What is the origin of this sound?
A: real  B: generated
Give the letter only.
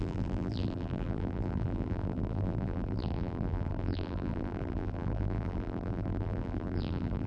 B